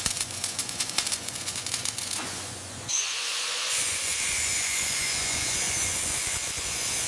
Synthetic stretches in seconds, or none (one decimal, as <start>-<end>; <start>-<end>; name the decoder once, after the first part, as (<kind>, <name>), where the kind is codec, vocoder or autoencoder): 0.0-7.1 (vocoder, Vocos)